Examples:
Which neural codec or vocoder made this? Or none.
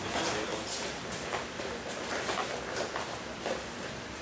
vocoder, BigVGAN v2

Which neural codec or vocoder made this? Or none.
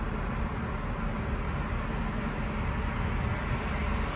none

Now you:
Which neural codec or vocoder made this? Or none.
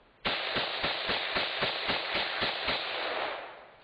none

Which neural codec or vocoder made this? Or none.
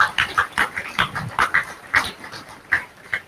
vocoder, BigVGAN v2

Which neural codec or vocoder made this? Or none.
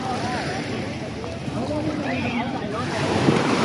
vocoder, BigVGAN v2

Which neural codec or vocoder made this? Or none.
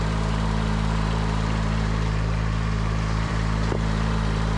vocoder, BigVGAN v2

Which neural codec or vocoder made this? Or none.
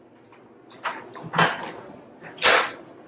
none